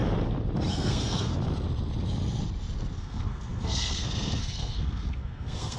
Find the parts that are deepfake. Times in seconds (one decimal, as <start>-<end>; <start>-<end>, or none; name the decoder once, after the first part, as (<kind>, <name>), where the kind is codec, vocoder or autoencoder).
0.7-1.3 (codec, SNAC); 3.0-5.8